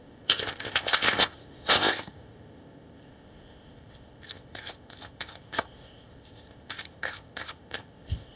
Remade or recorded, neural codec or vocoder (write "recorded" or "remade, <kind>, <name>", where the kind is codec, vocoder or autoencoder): remade, codec, ZipCodec